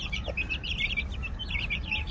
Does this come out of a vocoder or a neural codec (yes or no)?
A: yes